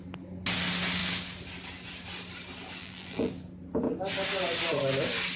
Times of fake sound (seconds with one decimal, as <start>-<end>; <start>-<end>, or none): 2.8-3.3